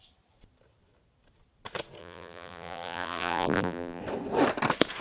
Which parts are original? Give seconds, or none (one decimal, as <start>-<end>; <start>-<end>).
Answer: 0.0-2.0; 4.0-5.0